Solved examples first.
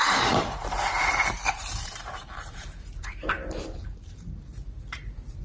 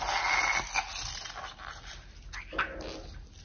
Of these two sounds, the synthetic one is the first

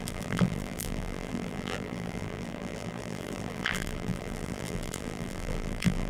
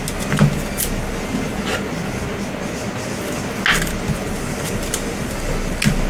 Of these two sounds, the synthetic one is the first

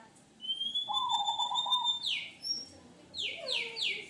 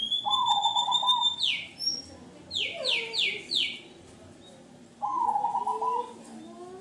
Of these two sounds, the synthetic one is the first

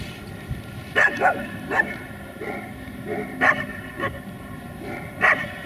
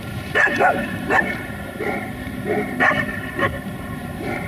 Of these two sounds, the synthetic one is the second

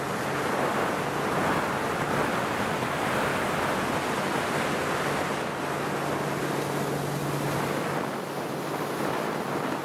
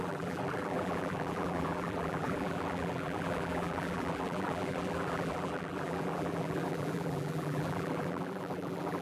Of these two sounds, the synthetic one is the second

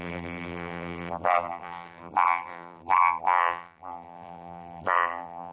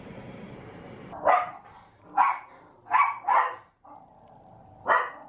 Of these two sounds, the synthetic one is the first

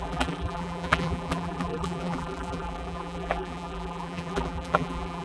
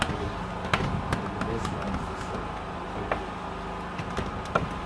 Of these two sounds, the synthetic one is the first